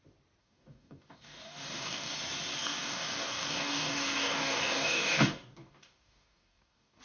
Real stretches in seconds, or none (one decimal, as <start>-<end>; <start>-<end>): 0.0-0.4; 2.1-2.6